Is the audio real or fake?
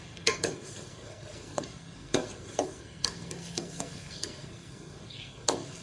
fake